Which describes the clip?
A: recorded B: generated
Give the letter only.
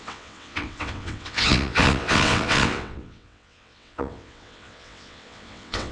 B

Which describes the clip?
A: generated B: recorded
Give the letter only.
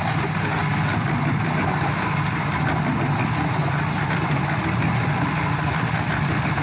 B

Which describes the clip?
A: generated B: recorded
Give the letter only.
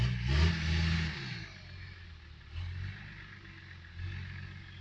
B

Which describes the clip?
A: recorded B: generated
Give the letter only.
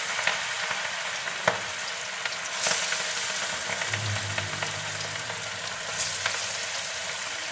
A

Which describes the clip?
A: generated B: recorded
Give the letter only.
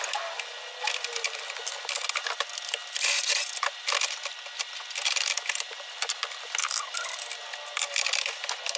B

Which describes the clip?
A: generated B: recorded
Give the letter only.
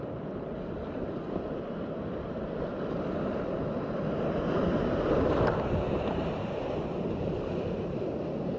B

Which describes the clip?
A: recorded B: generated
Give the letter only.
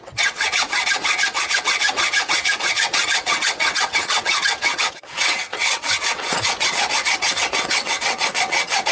B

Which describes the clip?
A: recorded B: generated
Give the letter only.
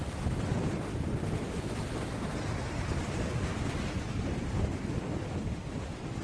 A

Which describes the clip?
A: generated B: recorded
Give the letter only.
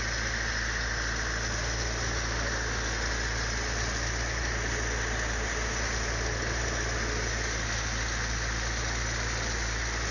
B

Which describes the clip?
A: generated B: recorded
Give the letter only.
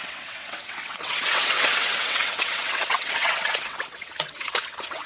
A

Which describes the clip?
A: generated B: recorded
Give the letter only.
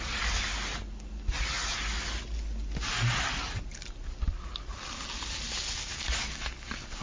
B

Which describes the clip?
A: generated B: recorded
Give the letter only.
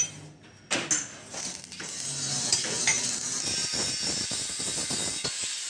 B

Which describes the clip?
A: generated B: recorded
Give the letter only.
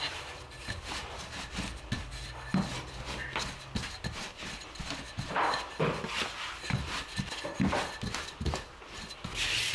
B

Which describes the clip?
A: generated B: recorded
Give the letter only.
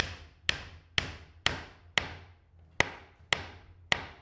B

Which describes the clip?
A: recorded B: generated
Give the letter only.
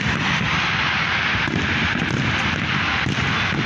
A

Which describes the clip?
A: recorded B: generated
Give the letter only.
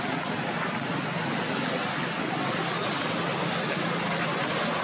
A